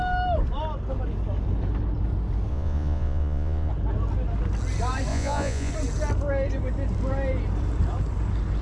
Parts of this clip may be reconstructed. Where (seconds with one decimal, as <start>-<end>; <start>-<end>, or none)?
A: 2.5-3.7; 5.1-5.7